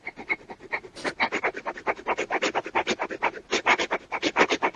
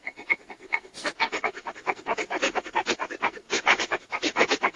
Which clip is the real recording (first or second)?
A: first